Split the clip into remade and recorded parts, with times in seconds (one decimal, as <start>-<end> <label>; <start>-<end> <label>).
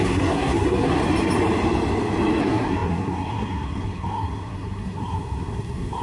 0.0-1.0 remade; 1.0-2.4 recorded; 2.4-6.0 remade